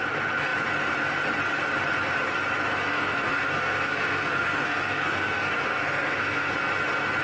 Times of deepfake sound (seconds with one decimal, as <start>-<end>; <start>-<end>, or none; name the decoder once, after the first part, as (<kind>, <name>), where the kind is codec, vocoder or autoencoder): 2.7-6.5 (codec, SNAC)